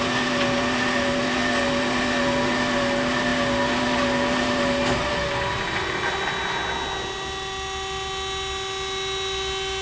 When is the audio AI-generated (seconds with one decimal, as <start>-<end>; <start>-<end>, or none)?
none